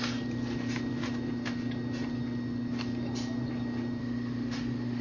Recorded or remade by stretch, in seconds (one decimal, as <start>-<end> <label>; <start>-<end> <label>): 0.0-4.0 recorded; 4.0-5.0 remade

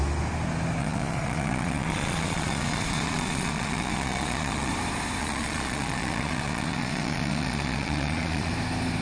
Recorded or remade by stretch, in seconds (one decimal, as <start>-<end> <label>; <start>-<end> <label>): 0.0-0.8 recorded; 0.8-4.7 remade; 4.7-5.2 recorded; 5.2-8.5 remade; 8.5-9.0 recorded